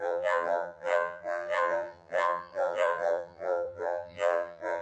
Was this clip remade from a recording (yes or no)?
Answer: yes